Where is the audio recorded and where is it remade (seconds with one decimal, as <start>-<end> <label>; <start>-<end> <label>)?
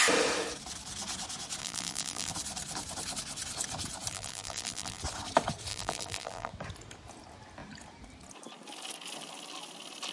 0.0-1.6 recorded; 1.6-2.3 remade; 2.3-4.1 recorded; 4.1-5.0 remade; 5.0-5.7 recorded; 5.7-6.5 remade; 6.5-10.1 recorded